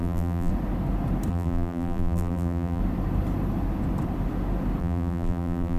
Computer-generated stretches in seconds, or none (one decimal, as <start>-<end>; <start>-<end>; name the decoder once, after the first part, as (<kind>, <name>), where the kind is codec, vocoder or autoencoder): 0.0-0.5 (vocoder, BigVGAN v2); 1.3-2.8; 4.8-5.8